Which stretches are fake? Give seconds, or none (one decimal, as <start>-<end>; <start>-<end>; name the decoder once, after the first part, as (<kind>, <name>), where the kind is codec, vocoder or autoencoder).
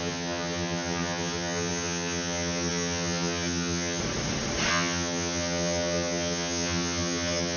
0.0-4.0 (vocoder, HiFi-GAN); 4.7-7.6